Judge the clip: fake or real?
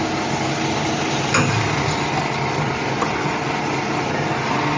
real